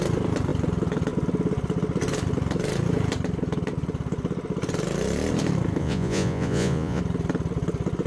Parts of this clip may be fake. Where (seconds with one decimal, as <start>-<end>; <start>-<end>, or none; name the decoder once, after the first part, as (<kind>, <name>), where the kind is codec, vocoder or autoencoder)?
5.8-7.0 (vocoder, Vocos)